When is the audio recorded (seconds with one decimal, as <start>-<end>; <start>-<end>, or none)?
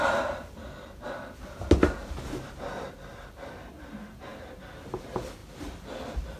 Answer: 0.0-6.4